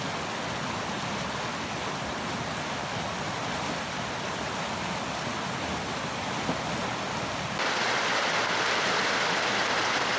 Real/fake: real